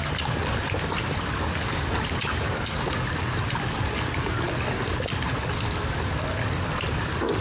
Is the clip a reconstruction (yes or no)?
no